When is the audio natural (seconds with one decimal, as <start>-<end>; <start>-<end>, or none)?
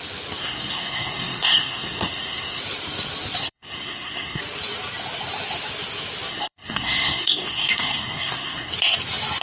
0.0-0.4; 2.6-3.4; 4.4-6.3; 8.7-9.4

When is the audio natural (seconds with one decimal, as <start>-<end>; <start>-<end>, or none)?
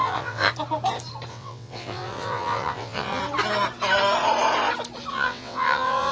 0.5-1.3; 3.2-5.1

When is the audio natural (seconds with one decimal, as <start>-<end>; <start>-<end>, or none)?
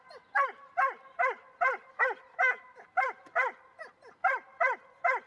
0.0-0.6; 3.8-5.3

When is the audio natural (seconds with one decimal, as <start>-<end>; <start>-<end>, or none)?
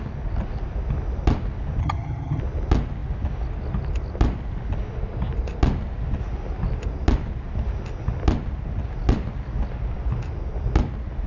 0.0-1.8; 2.4-11.3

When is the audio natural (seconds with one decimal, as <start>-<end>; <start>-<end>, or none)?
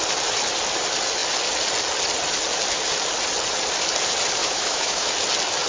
0.0-4.4; 5.1-5.7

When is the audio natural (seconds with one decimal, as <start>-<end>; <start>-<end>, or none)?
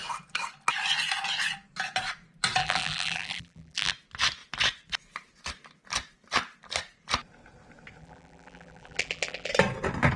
0.0-2.6; 3.9-8.0; 9.5-10.2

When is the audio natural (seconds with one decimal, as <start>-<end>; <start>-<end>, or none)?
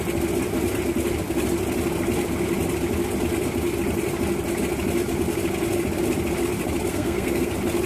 0.0-6.9; 7.5-7.9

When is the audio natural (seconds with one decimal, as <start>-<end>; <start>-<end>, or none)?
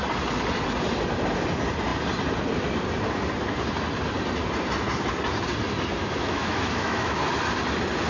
0.0-6.0; 7.2-8.1